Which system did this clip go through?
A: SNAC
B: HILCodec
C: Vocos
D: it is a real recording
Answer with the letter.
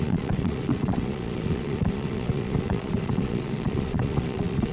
C